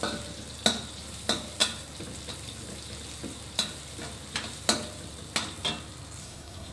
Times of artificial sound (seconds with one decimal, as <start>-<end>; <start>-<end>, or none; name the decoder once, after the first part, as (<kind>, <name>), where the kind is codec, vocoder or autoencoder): 6.2-6.7 (codec, SNAC)